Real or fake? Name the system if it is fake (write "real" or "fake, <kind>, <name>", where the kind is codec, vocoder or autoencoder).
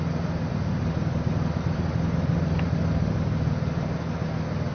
real